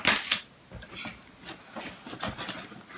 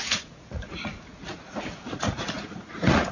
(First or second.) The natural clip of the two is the first